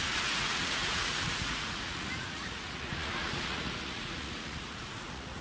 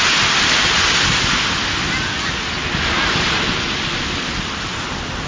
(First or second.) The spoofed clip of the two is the first